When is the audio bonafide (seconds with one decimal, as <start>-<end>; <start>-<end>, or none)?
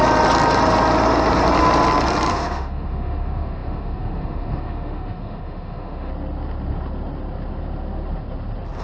0.0-2.3; 6.1-8.8